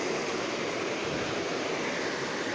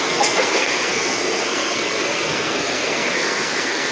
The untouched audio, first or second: first